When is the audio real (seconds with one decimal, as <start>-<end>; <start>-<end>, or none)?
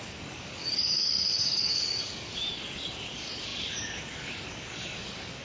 none